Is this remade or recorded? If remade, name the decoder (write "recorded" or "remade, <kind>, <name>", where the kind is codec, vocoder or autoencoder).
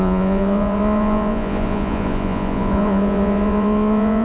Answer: remade, vocoder, Vocos